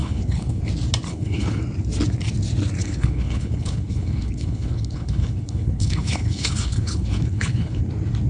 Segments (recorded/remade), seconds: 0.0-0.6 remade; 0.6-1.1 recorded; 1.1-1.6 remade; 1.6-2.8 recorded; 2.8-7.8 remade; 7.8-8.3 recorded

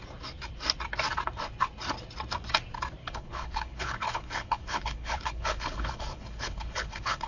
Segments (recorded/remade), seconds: 0.0-3.0 recorded; 3.0-7.3 remade